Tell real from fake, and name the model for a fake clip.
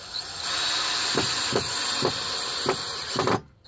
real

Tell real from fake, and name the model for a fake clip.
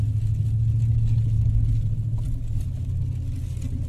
real